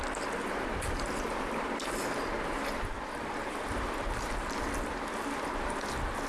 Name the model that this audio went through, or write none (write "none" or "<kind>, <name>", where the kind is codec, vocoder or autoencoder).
vocoder, BigVGAN v2